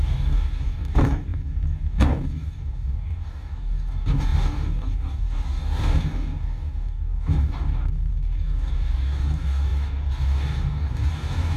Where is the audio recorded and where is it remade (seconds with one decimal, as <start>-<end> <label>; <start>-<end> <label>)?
0.0-11.6 remade